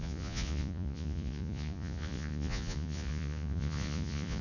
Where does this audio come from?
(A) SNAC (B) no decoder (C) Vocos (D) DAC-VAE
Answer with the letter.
C